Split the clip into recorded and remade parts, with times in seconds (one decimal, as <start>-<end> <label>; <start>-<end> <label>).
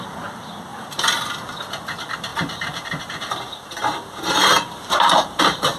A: 0.0-0.7 recorded; 0.7-1.6 remade; 1.6-2.3 recorded; 2.3-5.8 remade